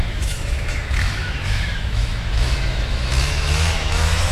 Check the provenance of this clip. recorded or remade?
remade